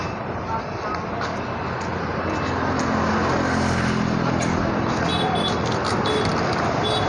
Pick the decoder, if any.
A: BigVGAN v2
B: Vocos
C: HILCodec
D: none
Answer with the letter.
D